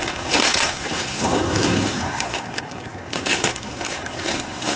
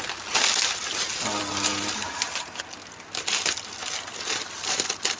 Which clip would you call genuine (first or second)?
second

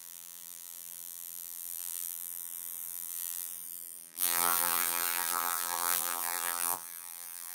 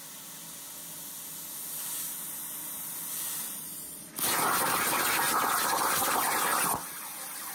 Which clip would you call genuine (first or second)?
second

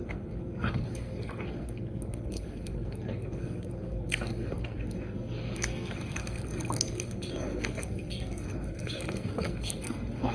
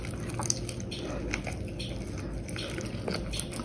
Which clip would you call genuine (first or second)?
second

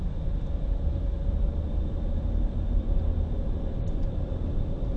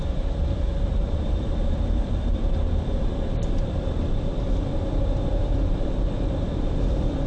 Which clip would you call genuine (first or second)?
first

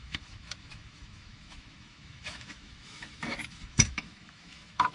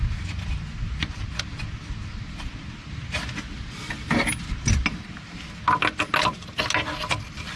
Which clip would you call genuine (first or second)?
second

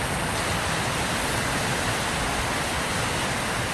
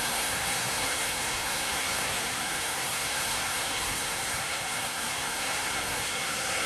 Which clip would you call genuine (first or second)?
first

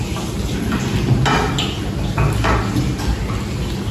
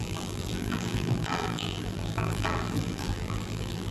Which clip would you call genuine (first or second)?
first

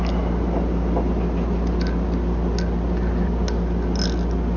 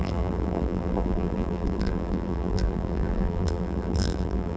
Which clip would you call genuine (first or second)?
first